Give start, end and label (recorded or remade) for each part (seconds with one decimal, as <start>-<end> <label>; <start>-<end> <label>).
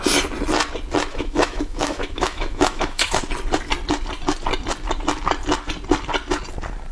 0.0-1.1 recorded; 1.1-3.2 remade; 3.2-6.9 recorded